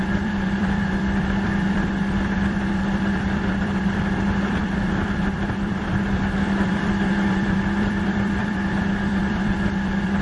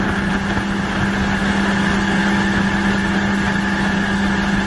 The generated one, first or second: first